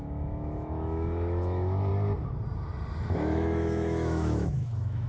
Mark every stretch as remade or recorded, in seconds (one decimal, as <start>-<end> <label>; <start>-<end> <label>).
0.0-1.9 remade; 1.9-3.0 recorded; 3.0-5.1 remade